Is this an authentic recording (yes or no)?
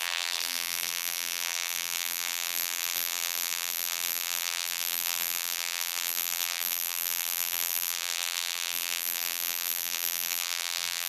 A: no